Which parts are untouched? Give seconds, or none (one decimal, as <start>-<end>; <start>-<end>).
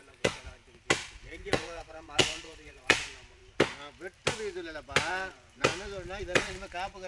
0.6-1.2; 3.4-5.1; 5.7-6.2